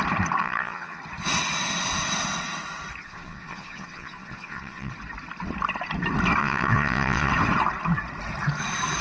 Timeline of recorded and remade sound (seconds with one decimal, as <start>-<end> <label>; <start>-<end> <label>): 0.0-0.4 recorded; 0.4-1.0 remade; 1.0-3.0 recorded; 3.0-4.9 remade; 4.9-6.4 recorded; 6.4-7.3 remade; 7.3-9.0 recorded